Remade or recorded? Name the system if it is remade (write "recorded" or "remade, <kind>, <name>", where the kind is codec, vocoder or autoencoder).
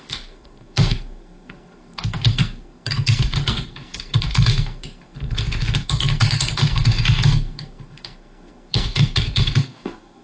remade, codec, SNAC